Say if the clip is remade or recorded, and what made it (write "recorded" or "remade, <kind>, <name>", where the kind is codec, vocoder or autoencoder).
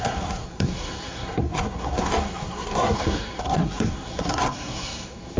remade, codec, SNAC